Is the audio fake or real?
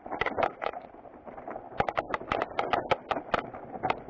real